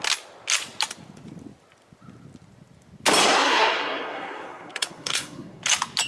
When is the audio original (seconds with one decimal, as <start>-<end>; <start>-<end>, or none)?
0.0-3.2; 5.6-6.1